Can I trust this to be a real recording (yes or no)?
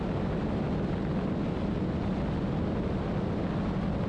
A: yes